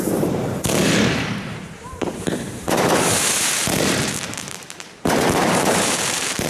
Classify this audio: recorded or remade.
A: remade